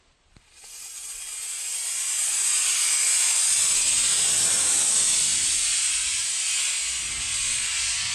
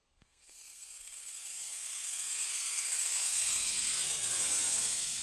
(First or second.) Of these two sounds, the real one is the first